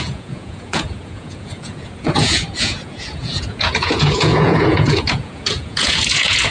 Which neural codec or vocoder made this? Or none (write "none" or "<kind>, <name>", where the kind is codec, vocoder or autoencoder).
vocoder, Vocos